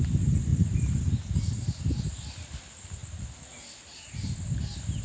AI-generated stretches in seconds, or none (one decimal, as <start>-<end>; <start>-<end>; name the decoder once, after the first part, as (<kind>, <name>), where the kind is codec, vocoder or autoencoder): none